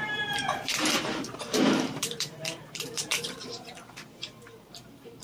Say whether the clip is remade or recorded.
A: remade